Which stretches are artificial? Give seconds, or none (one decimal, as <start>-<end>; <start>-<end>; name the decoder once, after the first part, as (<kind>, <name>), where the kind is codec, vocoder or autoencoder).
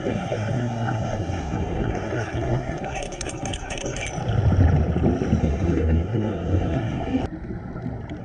0.0-4.0 (codec, SNAC); 5.4-7.2